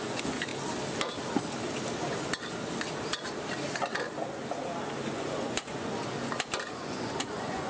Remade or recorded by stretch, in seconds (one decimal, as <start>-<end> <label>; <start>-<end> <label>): 0.0-0.5 remade; 0.5-5.1 recorded; 5.1-5.9 remade; 5.9-6.7 recorded; 6.7-7.7 remade